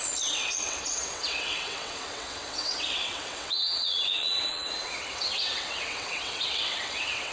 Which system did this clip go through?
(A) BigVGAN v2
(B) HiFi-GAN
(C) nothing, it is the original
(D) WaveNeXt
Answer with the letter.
D